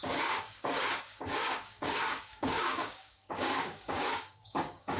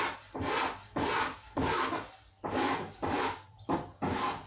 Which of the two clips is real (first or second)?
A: second